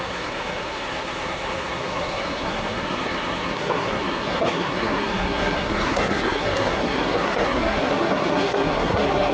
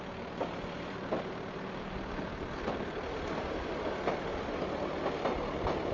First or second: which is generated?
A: first